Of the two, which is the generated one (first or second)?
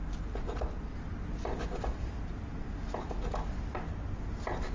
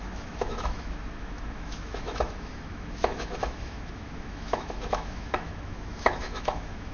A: second